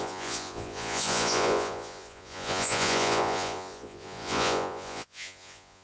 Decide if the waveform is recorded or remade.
remade